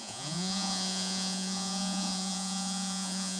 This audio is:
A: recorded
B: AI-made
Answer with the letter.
B